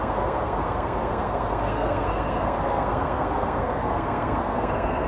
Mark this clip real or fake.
fake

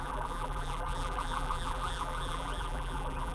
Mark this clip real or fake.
fake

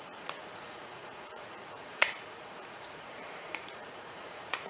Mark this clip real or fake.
fake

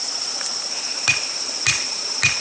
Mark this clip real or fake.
real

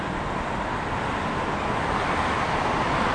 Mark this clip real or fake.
real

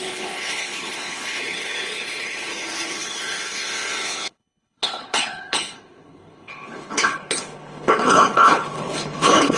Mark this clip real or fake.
fake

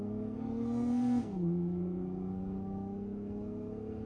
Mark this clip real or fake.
fake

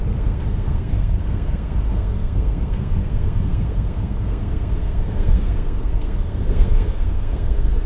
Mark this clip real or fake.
fake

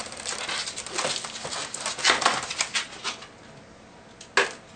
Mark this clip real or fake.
real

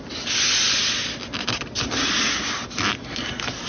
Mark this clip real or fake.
real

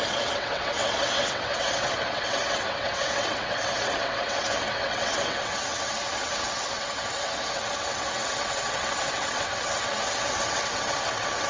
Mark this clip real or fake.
fake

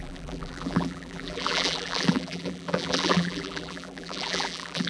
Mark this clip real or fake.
fake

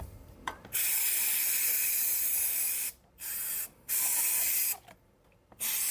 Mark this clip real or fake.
fake